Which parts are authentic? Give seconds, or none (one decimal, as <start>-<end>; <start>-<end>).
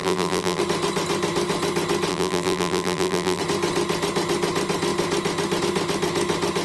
0.6-2.1; 3.4-6.6